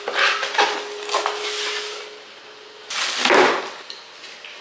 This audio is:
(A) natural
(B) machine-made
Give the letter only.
A